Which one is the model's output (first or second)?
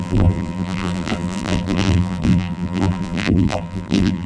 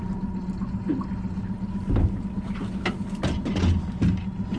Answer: first